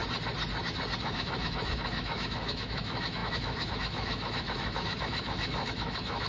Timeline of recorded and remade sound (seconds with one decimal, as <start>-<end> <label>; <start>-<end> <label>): 0.0-1.0 recorded; 1.0-6.3 remade